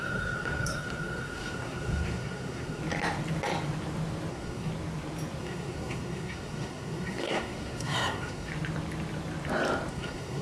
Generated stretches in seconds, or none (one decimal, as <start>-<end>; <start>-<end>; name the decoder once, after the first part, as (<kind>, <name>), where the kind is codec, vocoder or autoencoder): 0.0-2.8 (codec, SNAC); 4.3-4.7; 5.4-8.5; 9.9-10.4